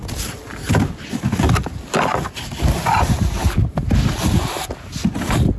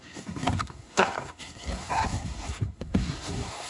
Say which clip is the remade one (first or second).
second